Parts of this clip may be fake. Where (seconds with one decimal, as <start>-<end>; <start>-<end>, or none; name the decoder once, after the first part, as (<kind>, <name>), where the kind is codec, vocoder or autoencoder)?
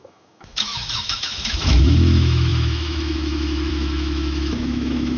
0.0-5.2 (autoencoder, DAC-VAE)